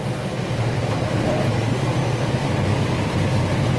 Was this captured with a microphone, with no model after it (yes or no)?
yes